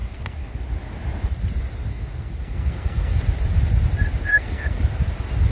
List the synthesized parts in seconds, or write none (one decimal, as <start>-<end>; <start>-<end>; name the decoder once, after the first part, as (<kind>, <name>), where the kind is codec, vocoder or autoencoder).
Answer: 0.0-0.6 (codec, SNAC); 1.9-3.2; 4.3-4.8